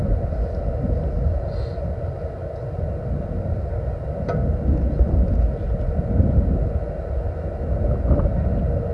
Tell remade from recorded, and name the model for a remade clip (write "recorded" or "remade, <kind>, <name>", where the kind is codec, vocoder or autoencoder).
recorded